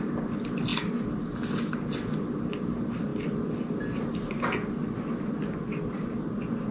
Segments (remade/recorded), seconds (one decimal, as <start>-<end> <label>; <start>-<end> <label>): 0.0-6.7 recorded